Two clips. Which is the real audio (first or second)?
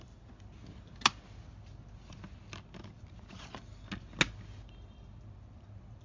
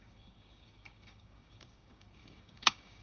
first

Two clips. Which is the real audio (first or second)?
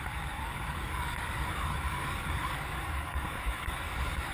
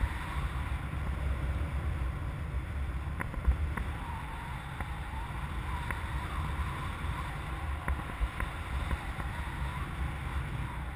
second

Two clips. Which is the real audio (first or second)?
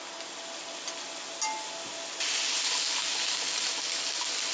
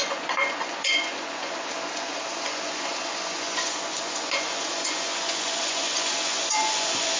first